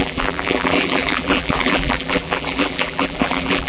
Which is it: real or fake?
fake